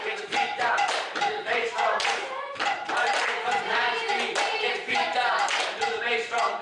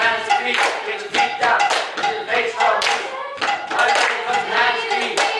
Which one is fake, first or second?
first